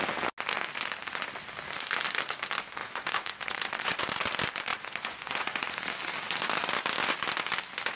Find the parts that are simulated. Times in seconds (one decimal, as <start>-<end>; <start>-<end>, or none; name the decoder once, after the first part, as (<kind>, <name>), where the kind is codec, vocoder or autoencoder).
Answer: 2.8-4.0 (vocoder, Vocos); 4.7-5.9